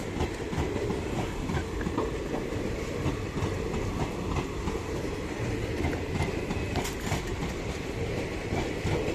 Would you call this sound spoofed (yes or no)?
yes